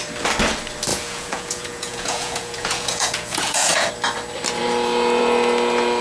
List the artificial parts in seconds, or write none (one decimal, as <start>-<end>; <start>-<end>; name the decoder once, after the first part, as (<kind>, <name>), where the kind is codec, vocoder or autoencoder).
0.9-3.9 (vocoder, Vocos)